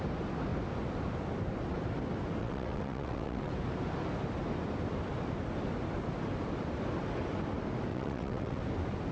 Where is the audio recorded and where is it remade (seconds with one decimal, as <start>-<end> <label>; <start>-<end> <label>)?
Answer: 0.0-2.4 recorded; 2.4-3.5 remade; 3.5-7.9 recorded; 7.9-8.6 remade; 8.6-9.1 recorded